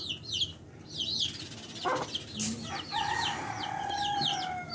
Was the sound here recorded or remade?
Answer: recorded